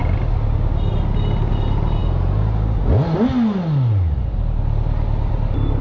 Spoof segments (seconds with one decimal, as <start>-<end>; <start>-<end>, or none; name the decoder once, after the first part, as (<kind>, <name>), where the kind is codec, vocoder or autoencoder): none